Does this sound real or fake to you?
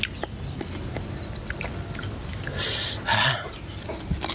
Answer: real